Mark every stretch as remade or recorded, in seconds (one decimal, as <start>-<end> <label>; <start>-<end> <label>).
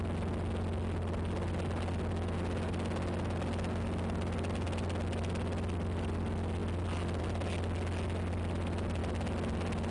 0.0-9.9 recorded